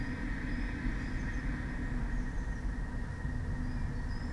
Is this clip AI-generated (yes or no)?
no